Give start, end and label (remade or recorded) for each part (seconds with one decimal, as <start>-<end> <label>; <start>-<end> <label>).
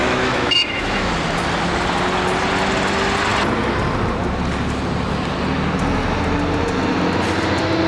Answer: 0.0-1.1 remade; 1.1-7.9 recorded